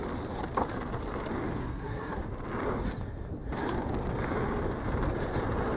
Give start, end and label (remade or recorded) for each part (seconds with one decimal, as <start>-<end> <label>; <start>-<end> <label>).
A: 0.0-1.6 recorded; 1.6-2.2 remade; 2.2-5.8 recorded